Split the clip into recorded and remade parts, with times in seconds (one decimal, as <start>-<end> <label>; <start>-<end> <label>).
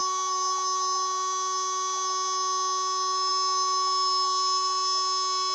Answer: 0.0-5.5 recorded